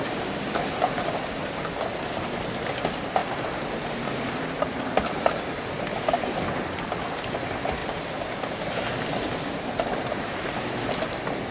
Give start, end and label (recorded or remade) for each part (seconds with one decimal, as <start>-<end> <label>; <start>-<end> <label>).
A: 0.0-11.5 recorded